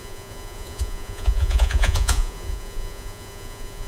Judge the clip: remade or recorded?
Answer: remade